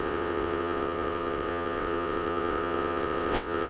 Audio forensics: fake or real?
fake